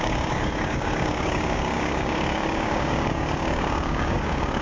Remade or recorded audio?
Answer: remade